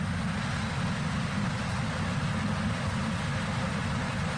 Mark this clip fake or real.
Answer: real